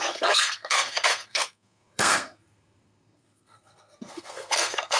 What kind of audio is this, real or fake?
fake